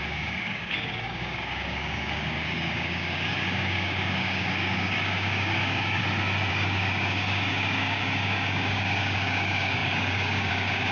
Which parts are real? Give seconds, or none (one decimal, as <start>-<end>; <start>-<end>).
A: 6.0-6.5